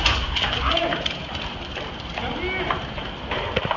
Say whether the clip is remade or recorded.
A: recorded